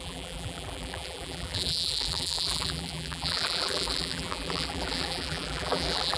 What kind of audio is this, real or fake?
fake